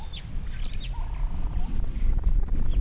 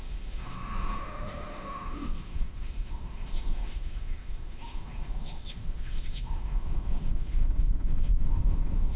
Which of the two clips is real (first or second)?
first